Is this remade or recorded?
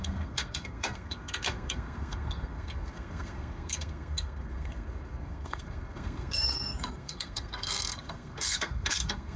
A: remade